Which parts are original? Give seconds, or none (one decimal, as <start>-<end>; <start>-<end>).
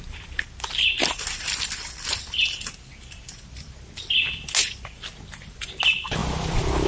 0.0-6.9